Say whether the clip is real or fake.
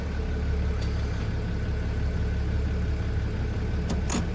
real